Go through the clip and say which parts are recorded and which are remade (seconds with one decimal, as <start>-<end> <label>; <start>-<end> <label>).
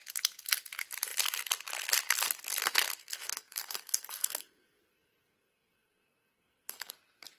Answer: 0.0-3.0 recorded; 3.0-6.9 remade; 6.9-7.4 recorded